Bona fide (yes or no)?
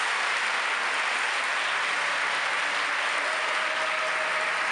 yes